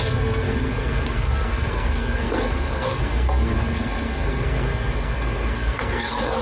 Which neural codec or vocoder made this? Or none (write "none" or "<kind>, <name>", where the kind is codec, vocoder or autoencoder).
codec, SNAC